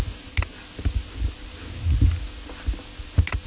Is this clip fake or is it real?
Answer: real